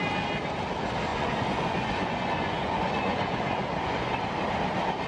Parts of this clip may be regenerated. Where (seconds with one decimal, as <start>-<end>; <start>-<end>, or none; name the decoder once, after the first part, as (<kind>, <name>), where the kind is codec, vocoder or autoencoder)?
1.1-4.2 (vocoder, Vocos)